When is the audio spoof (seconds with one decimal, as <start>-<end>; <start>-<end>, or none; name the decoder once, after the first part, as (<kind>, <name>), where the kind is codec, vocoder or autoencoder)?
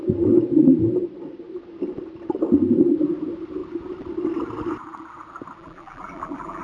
5.6-6.6 (vocoder, BigVGAN v2)